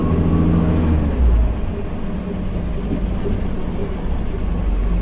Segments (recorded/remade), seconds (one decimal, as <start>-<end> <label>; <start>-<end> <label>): 0.0-5.0 recorded

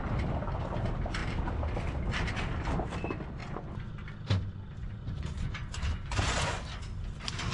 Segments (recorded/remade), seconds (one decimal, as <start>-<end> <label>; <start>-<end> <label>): 0.0-3.4 recorded; 3.4-3.9 remade; 3.9-4.8 recorded; 4.8-6.6 remade; 6.6-7.5 recorded

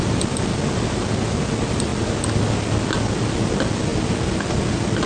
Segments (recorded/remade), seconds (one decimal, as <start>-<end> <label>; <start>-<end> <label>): 0.0-5.1 recorded

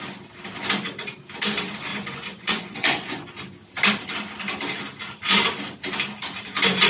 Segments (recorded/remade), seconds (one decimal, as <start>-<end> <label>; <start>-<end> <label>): 0.0-1.9 recorded; 1.9-3.3 remade; 3.3-6.9 recorded

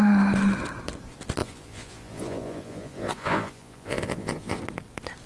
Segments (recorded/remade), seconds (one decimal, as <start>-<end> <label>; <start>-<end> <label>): 0.0-1.4 recorded; 1.4-4.6 remade; 4.6-5.3 recorded

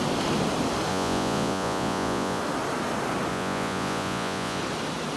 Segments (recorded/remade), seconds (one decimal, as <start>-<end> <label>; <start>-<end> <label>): 0.0-0.9 recorded; 0.9-2.4 remade; 2.4-3.3 recorded; 3.3-4.6 remade; 4.6-5.2 recorded